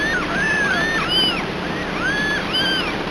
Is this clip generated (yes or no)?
no